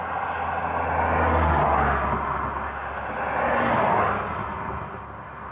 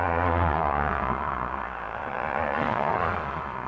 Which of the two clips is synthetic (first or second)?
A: second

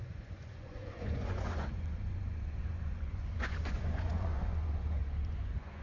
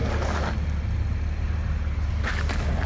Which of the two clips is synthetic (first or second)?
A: first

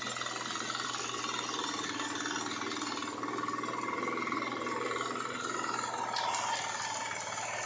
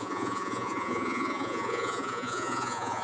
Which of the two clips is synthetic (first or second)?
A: second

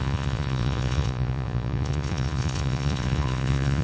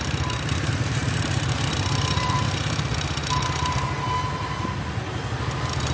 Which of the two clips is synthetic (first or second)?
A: first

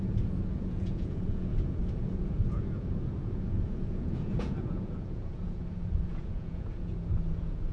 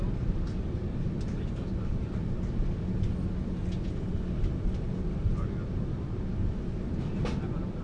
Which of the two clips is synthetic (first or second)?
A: first